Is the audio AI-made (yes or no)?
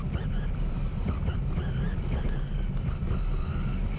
no